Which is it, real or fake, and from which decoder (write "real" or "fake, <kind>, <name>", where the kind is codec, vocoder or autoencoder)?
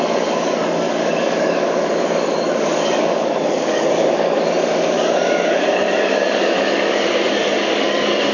fake, codec, DAC